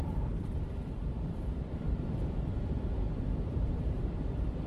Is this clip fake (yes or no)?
yes